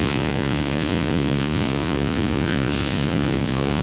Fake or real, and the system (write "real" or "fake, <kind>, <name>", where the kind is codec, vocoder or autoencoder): fake, vocoder, Vocos